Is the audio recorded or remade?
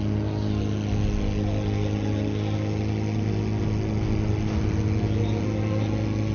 recorded